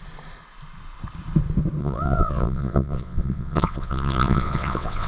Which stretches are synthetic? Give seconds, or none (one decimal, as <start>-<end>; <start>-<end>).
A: 1.8-5.1